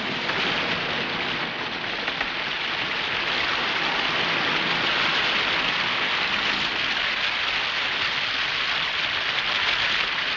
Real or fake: real